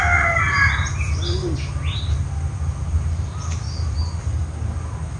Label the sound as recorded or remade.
recorded